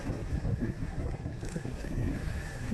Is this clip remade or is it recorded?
remade